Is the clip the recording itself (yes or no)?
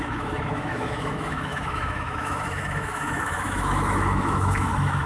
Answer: no